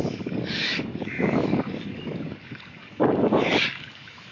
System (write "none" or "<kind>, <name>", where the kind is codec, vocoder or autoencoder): codec, DAC